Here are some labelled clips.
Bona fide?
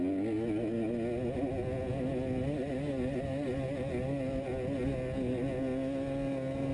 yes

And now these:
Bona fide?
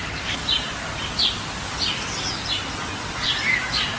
yes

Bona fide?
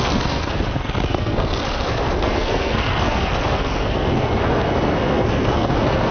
no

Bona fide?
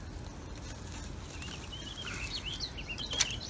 yes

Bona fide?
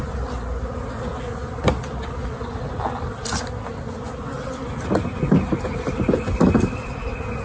yes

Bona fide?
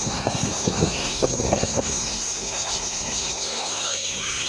no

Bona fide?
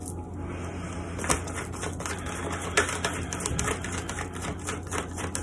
yes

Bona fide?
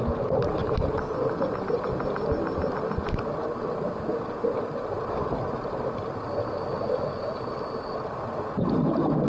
yes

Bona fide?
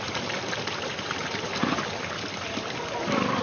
yes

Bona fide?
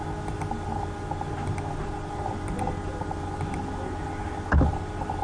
yes